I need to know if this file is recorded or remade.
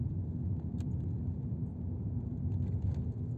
recorded